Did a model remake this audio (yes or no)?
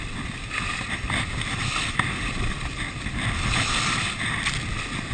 no